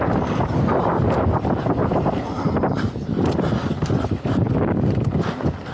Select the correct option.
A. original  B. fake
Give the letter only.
A